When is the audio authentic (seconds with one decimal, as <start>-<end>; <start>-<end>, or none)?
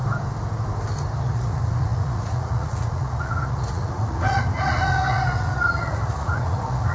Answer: 0.0-1.2